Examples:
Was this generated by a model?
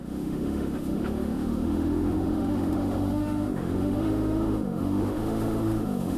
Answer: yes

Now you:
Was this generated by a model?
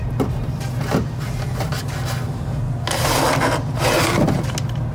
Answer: no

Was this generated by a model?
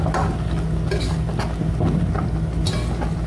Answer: no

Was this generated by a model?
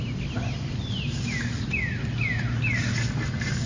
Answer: no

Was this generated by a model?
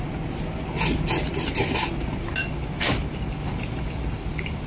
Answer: no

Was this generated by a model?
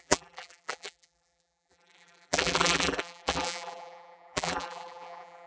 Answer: yes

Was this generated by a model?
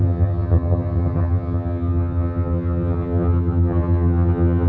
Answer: yes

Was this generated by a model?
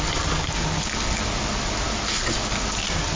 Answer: no